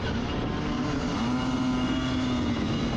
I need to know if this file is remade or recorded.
recorded